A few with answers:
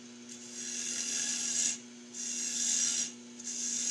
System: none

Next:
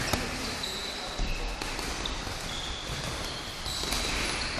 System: none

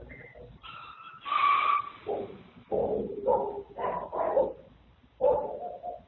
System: none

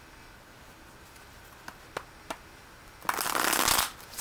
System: none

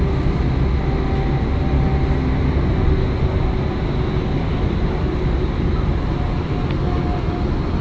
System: none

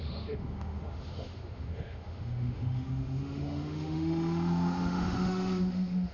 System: autoencoder, DAC-VAE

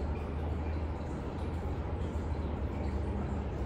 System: none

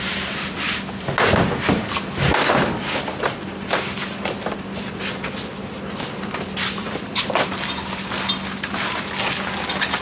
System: none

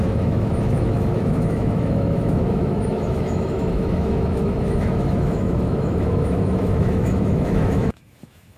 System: autoencoder, DAC-VAE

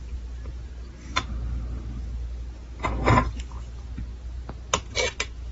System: none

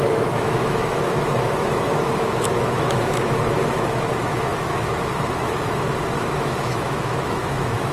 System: autoencoder, DAC-VAE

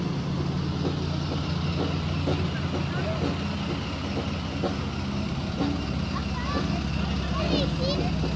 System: none